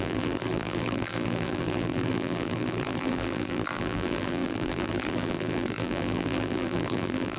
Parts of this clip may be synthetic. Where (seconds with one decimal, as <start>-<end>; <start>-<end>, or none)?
0.0-7.4